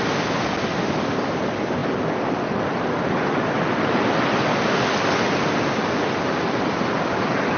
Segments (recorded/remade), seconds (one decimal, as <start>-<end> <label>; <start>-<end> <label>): 0.0-7.6 recorded